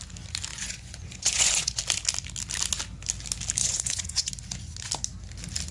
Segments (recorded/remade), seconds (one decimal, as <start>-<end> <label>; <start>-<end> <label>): 0.0-0.5 recorded; 0.5-1.8 remade; 1.8-3.6 recorded; 3.6-4.3 remade; 4.3-5.7 recorded